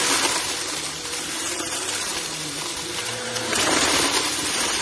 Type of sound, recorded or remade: remade